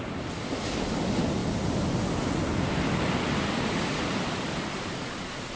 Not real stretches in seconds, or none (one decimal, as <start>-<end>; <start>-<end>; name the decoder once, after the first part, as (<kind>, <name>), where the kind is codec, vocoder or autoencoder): none